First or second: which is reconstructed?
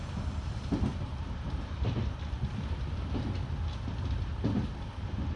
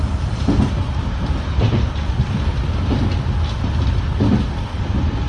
first